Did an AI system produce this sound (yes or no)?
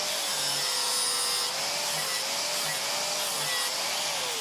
no